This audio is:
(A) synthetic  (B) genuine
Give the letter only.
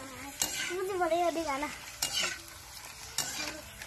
B